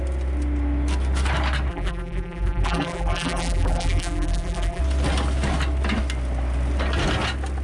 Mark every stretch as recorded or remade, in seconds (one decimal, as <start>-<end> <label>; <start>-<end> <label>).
0.0-1.7 recorded; 1.7-4.8 remade; 4.8-7.6 recorded